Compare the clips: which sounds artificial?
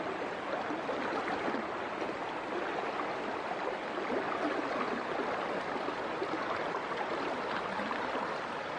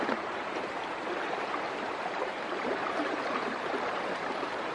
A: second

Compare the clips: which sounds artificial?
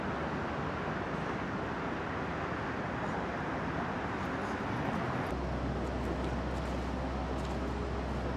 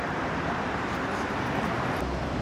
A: second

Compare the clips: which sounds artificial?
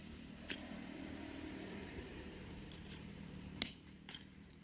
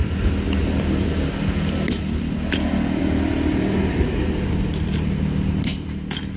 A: first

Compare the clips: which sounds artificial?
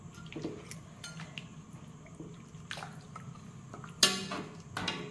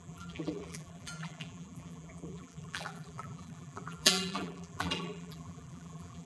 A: second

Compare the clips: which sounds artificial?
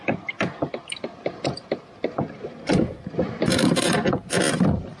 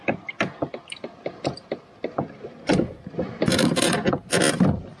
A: first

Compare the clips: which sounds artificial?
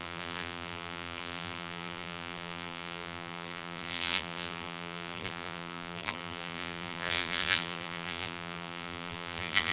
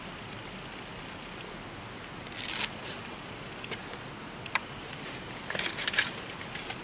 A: first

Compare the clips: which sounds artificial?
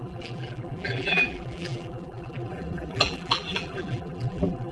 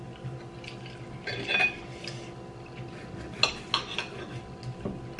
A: first